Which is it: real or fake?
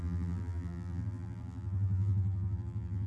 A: fake